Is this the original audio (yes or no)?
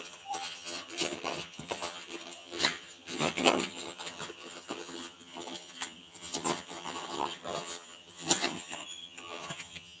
no